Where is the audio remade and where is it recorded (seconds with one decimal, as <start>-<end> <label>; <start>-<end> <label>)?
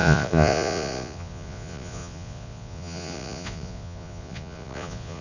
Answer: 0.0-5.2 remade